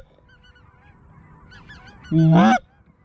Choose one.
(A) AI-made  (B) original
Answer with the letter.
B